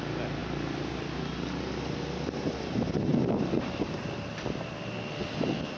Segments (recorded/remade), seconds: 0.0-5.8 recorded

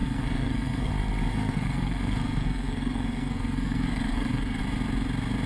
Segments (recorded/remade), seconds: 0.0-0.9 remade; 0.9-1.3 recorded; 1.3-4.6 remade; 4.6-5.5 recorded

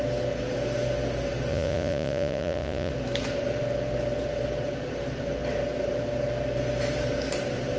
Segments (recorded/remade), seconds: 0.0-1.5 recorded; 1.5-2.9 remade; 2.9-7.8 recorded

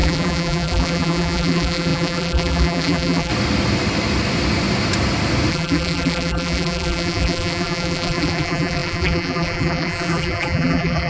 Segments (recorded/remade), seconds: 0.0-3.3 remade; 3.3-5.5 recorded; 5.5-11.1 remade

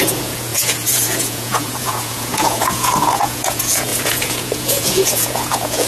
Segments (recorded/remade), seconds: 0.0-5.9 remade

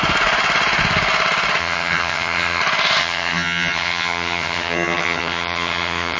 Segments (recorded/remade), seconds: 0.0-1.6 recorded; 1.6-2.6 remade; 2.6-3.0 recorded; 3.0-6.2 remade